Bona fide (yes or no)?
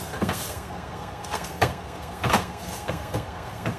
no